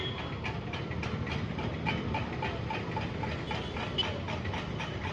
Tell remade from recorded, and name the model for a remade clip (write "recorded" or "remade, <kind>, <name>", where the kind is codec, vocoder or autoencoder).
recorded